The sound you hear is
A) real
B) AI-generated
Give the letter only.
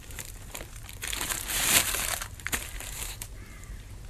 B